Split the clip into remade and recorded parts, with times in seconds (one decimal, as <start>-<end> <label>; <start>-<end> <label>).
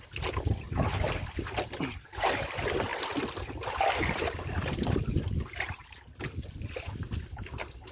0.0-7.9 recorded